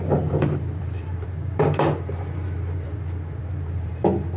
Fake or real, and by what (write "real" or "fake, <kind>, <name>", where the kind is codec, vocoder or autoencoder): fake, vocoder, BigVGAN v2